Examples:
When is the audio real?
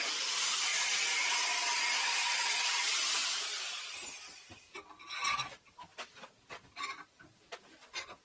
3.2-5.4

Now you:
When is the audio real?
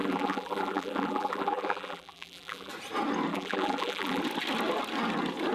2.7-3.3; 4.2-5.5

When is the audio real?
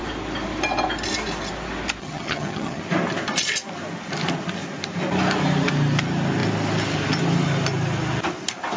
0.0-2.0; 2.8-8.8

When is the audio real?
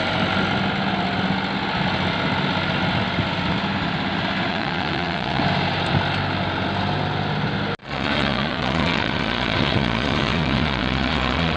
0.0-4.5; 5.4-7.8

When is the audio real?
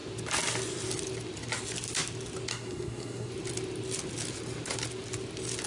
0.0-2.5; 3.3-5.7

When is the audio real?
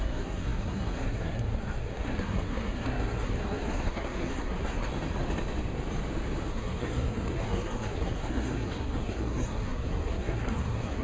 4.9-6.5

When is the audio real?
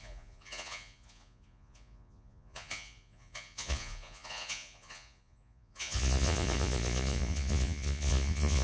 none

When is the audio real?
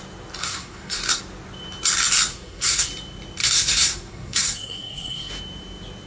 0.0-0.4; 1.2-2.3; 2.9-3.4; 5.3-6.1